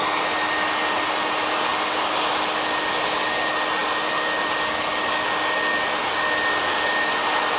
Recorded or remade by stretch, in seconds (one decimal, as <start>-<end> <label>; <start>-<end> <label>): 0.0-7.6 recorded